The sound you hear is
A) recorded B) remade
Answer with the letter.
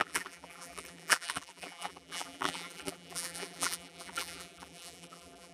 B